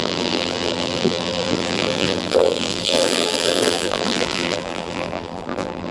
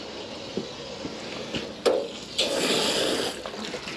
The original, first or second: second